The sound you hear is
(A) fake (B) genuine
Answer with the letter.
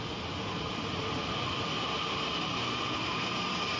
A